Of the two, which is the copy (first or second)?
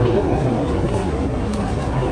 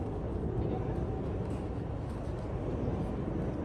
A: first